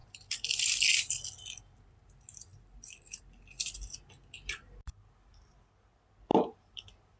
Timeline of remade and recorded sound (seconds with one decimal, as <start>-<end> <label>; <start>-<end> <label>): 0.0-0.8 remade; 0.8-2.5 recorded; 2.5-3.7 remade; 3.7-7.2 recorded